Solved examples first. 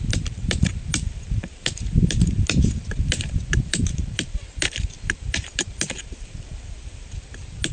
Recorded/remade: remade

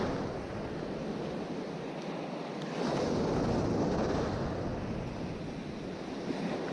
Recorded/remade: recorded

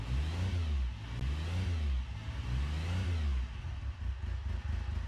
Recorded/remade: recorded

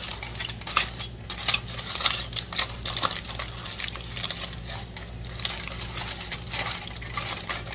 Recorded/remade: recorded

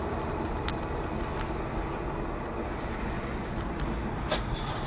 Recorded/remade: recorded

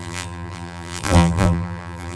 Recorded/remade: remade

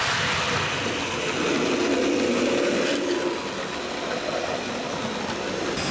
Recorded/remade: recorded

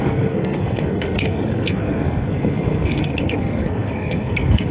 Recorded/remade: remade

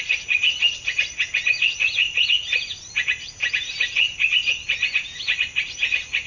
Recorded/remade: recorded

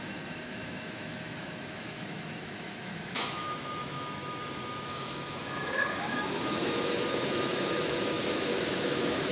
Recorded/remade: remade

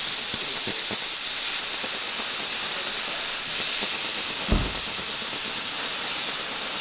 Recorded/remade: recorded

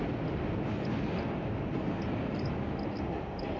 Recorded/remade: recorded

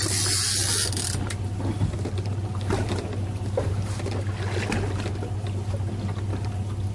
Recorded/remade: recorded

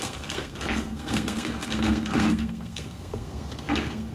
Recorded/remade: remade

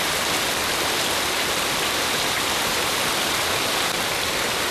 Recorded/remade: remade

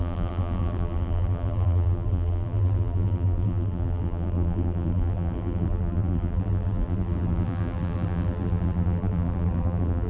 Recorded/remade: remade